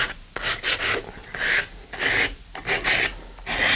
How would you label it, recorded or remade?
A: recorded